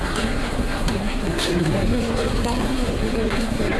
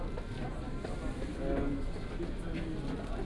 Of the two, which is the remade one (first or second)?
first